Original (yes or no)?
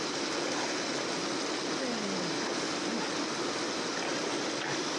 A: yes